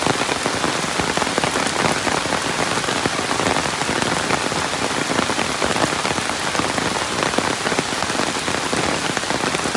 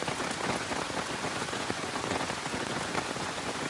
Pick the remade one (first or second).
second